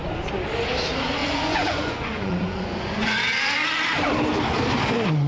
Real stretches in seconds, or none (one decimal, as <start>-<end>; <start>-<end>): 0.0-1.2; 3.2-5.3